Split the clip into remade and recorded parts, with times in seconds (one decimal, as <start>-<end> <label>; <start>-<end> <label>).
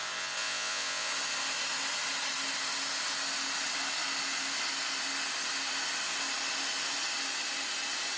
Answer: 0.0-1.1 remade; 1.1-8.2 recorded